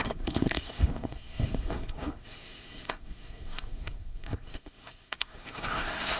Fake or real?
fake